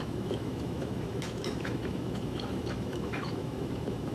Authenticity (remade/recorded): remade